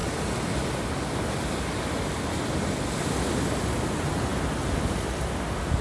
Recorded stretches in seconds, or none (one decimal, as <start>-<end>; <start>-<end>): 0.0-5.8